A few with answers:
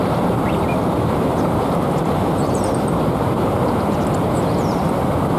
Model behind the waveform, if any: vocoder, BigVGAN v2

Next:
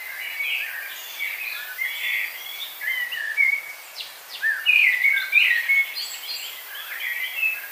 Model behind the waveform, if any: none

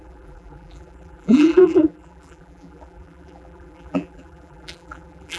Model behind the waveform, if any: vocoder, BigVGAN v2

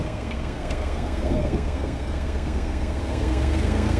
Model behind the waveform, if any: codec, SNAC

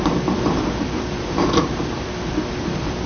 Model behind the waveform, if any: vocoder, BigVGAN v2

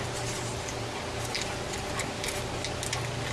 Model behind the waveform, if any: none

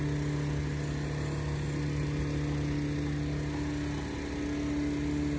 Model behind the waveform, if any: none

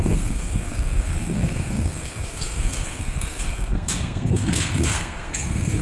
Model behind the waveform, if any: codec, SNAC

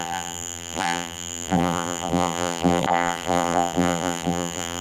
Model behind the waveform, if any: vocoder, BigVGAN v2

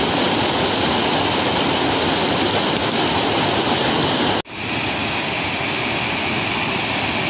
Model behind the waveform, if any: none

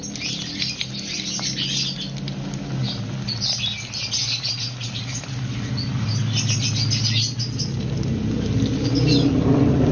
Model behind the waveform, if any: none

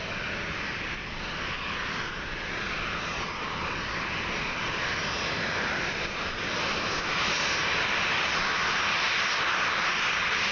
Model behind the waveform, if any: none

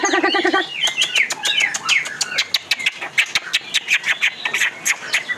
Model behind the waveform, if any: none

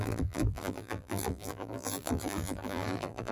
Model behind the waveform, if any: vocoder, BigVGAN v2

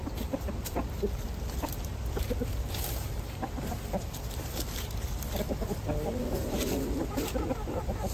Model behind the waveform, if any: vocoder, BigVGAN v2